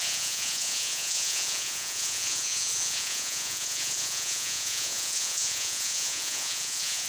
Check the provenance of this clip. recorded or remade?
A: remade